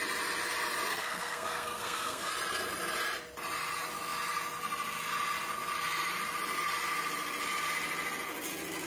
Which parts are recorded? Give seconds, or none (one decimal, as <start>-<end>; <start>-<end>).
0.0-0.9; 2.3-8.9